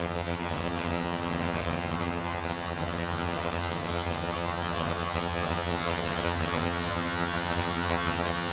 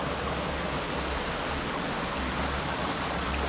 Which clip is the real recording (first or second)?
second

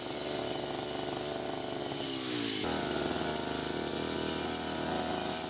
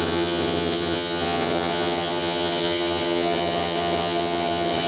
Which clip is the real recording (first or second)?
first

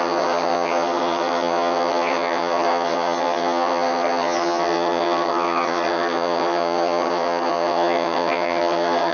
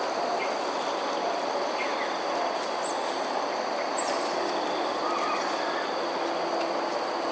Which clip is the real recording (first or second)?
second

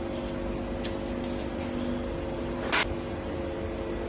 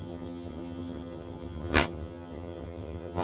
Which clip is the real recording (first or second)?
first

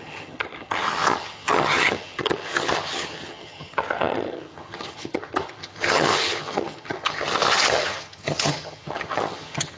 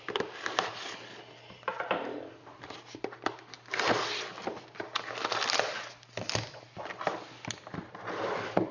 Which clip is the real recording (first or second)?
second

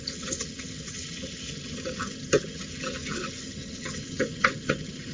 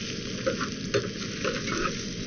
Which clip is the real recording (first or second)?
second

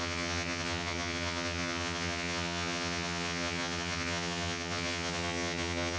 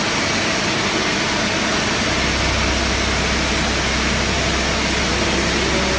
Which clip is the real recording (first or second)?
second